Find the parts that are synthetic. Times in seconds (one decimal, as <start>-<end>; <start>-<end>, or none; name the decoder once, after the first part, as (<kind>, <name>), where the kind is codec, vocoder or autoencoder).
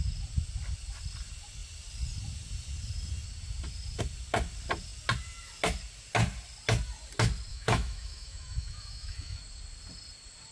7.5-9.4 (autoencoder, DAC-VAE)